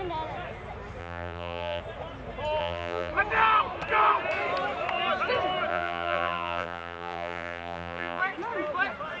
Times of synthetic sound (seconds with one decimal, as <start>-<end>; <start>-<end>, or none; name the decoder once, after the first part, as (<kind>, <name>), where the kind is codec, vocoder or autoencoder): 1.0-1.8 (vocoder, BigVGAN v2); 2.6-3.1; 5.7-8.2